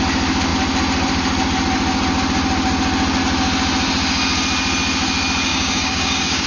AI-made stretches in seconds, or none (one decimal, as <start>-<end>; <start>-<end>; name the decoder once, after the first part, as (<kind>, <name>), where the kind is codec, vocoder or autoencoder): 5.5-6.5 (codec, DAC)